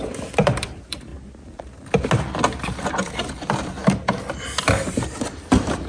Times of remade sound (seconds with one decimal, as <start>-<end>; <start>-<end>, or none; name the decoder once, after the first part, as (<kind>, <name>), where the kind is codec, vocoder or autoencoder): 0.0-1.1 (vocoder, BigVGAN v2); 3.3-3.8